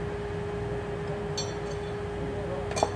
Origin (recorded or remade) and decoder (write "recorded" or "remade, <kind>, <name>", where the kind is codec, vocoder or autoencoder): recorded